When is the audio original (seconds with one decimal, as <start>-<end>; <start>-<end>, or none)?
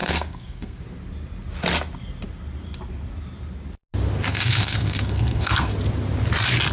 0.8-4.3; 5.7-6.7